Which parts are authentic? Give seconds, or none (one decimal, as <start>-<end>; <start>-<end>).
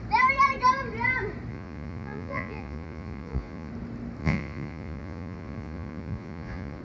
0.0-1.5; 3.7-4.2